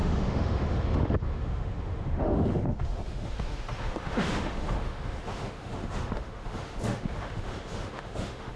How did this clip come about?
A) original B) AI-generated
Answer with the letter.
B